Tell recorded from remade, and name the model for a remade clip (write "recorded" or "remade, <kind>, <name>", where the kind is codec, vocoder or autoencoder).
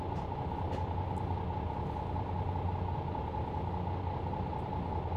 recorded